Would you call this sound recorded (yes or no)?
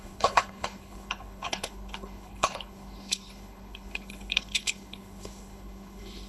no